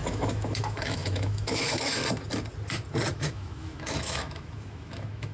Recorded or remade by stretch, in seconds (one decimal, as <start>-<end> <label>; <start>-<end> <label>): 0.0-2.0 remade; 2.0-3.1 recorded; 3.1-5.3 remade